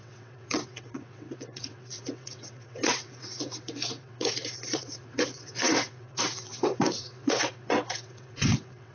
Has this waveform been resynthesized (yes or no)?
yes